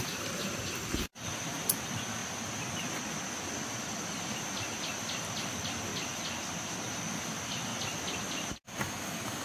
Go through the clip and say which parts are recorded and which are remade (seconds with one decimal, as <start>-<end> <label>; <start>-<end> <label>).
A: 0.0-2.2 remade; 2.2-4.3 recorded; 4.3-5.9 remade; 5.9-7.2 recorded; 7.2-9.4 remade